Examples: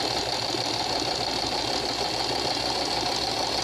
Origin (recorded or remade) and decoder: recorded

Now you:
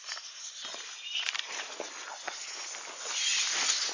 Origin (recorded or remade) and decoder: recorded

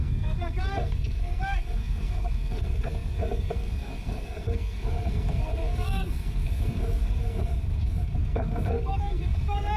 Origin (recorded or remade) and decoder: remade, codec, SNAC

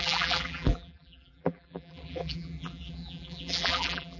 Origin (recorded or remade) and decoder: remade, vocoder, BigVGAN v2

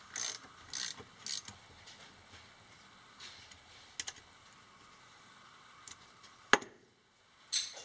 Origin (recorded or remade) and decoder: recorded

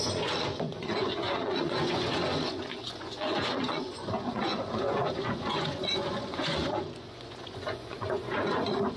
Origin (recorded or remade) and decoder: remade, vocoder, Vocos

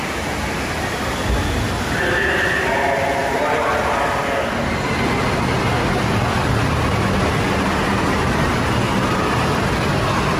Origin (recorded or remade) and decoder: recorded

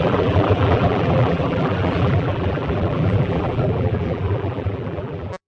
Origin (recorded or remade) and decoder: remade, vocoder, BigVGAN v2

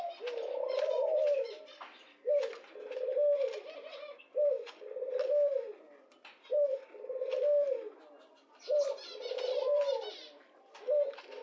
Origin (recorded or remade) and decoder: remade, vocoder, BigVGAN v2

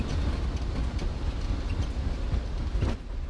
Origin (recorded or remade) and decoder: recorded